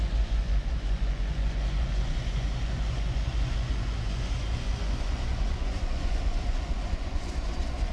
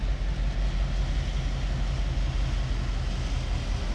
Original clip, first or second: second